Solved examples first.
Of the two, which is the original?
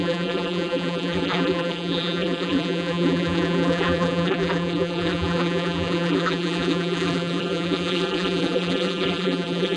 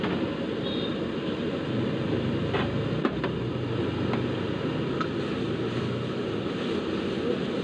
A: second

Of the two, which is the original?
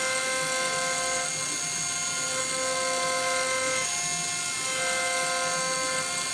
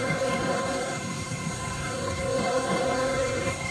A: first